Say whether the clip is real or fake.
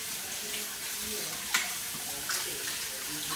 real